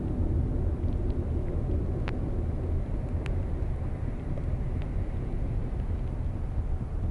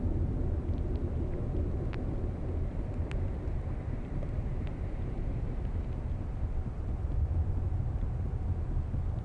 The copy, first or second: second